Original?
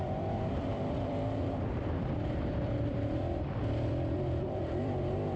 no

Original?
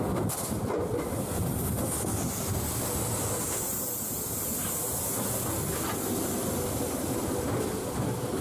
yes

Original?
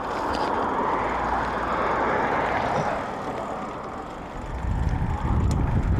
yes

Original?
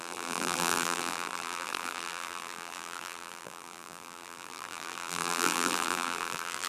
no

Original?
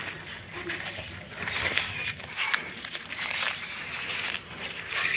no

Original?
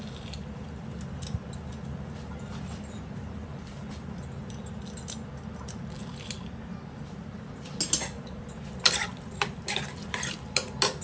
yes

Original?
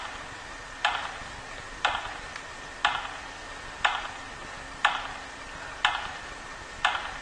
yes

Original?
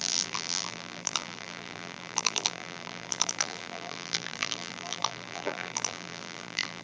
no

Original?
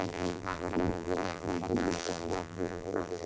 no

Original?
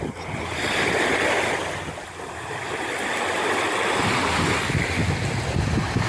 yes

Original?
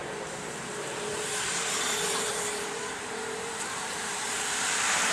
no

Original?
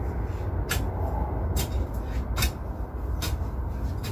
yes